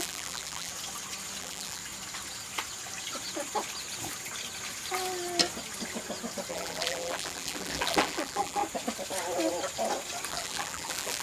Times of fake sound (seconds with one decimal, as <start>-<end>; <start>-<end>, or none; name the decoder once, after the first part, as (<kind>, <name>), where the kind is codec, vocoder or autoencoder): 0.0-0.7 (vocoder, BigVGAN v2); 1.4-1.8; 6.5-8.6; 10.3-11.2